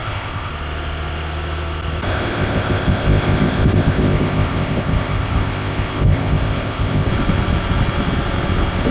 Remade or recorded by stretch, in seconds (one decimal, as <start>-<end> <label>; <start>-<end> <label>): 0.0-0.5 remade; 0.5-2.1 recorded; 2.1-7.1 remade; 7.1-8.9 recorded